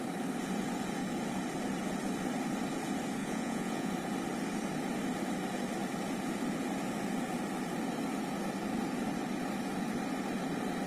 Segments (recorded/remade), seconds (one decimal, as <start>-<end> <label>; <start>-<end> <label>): 0.0-3.2 recorded; 3.2-3.9 remade; 3.9-10.9 recorded